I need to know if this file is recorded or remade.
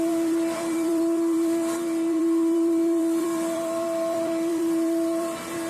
remade